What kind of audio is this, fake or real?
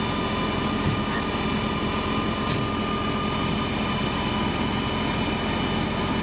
real